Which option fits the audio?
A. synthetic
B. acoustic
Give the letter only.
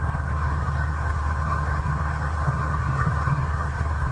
A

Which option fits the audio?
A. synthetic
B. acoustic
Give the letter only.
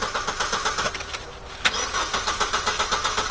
B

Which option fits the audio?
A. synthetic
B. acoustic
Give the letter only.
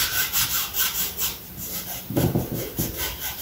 A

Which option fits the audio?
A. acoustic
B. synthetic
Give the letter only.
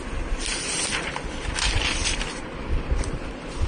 A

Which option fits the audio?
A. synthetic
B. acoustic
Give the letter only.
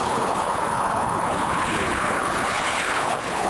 A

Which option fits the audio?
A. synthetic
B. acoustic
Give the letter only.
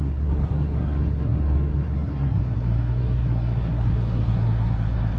A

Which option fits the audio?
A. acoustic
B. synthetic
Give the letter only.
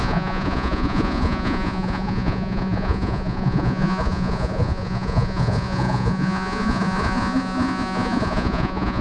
B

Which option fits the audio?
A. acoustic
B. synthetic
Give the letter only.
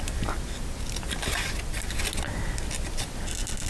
A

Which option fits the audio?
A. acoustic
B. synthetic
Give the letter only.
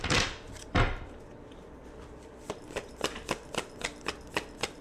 B